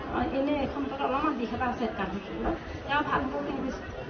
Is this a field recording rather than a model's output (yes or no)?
yes